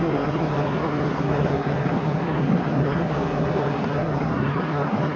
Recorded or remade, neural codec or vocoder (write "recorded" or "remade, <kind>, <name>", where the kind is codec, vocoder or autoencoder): remade, codec, SNAC